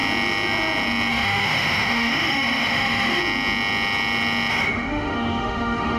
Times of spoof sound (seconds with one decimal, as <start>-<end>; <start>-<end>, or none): 1.1-3.2; 4.5-6.0